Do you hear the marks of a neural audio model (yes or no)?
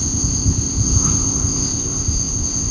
yes